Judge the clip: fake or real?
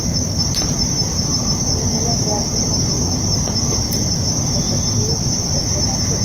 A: fake